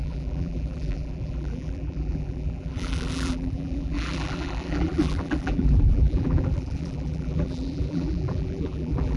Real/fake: fake